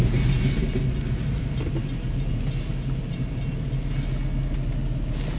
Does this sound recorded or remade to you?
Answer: recorded